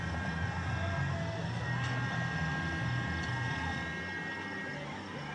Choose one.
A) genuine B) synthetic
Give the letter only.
A